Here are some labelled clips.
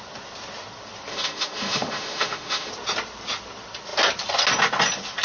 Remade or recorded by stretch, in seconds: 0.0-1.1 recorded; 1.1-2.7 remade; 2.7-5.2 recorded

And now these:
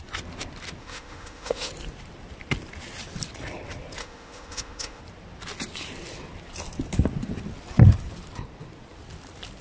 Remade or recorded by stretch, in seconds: 0.0-0.8 recorded; 0.8-1.7 remade; 1.7-4.0 recorded; 4.0-5.0 remade; 5.0-9.6 recorded

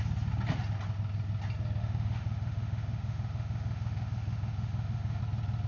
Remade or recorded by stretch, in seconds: 0.0-1.8 recorded; 1.8-5.2 remade; 5.2-5.7 recorded

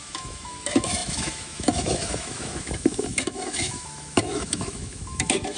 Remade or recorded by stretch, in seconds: 0.0-5.6 remade

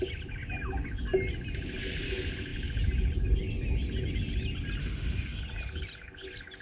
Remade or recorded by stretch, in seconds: 0.0-4.8 recorded; 4.8-5.4 remade; 5.4-6.6 recorded

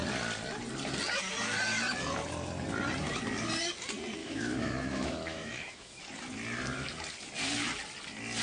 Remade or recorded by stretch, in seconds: 0.0-4.2 recorded; 4.2-6.0 remade; 6.0-8.4 recorded

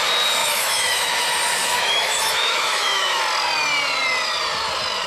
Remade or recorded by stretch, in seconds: 0.0-0.4 recorded; 0.4-1.2 remade; 1.2-1.6 recorded; 1.6-3.2 remade; 3.2-5.1 recorded